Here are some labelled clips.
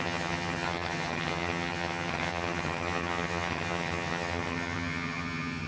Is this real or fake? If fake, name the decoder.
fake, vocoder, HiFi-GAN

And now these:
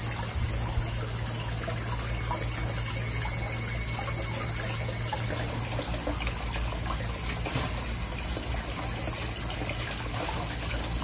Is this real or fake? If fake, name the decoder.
real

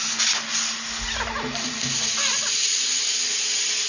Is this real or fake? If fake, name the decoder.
real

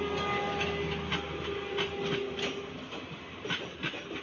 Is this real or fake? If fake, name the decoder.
real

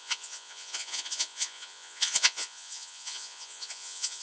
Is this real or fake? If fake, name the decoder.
fake, vocoder, Vocos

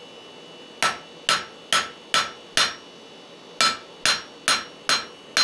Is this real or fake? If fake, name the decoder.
real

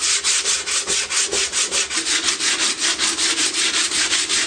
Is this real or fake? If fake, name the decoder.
real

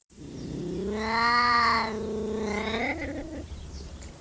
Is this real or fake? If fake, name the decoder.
fake, vocoder, BigVGAN v2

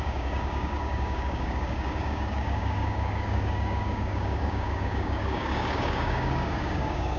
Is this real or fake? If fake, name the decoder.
fake, codec, DAC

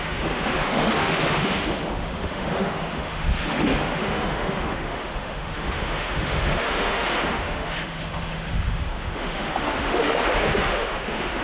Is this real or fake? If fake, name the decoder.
fake, autoencoder, DAC-VAE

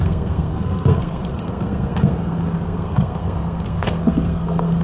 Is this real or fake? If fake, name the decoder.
fake, codec, SNAC